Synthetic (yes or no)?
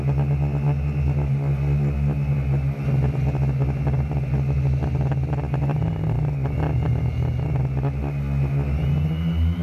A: no